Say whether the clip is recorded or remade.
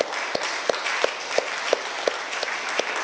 recorded